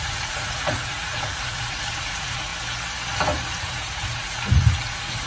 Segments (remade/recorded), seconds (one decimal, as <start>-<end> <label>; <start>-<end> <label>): 0.0-2.5 remade; 2.5-3.6 recorded; 3.6-5.3 remade